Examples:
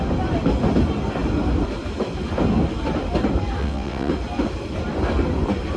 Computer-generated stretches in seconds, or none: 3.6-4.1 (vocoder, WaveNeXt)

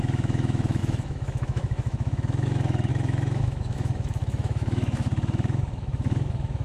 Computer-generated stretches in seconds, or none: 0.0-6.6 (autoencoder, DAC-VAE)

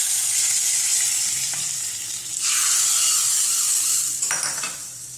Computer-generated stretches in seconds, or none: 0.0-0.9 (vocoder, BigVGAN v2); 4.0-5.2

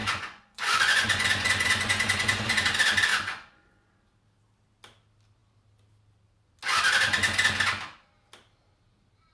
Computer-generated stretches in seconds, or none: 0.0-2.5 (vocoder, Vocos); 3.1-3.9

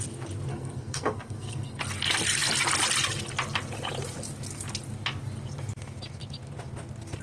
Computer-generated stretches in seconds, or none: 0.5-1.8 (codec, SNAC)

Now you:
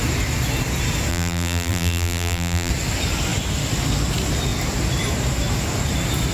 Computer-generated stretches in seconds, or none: 1.1-2.7 (vocoder, BigVGAN v2)

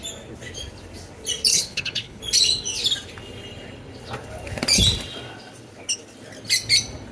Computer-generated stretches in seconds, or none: 1.5-2.2 (codec, HILCodec)